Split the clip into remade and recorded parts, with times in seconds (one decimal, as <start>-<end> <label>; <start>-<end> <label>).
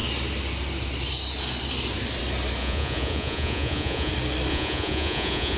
0.0-2.6 recorded; 2.6-4.1 remade; 4.1-4.5 recorded; 4.5-5.6 remade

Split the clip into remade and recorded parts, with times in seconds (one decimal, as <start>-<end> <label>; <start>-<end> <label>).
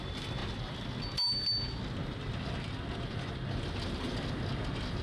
0.0-5.0 recorded